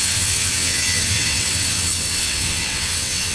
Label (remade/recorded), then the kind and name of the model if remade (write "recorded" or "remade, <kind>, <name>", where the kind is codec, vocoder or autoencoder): remade, vocoder, WaveNeXt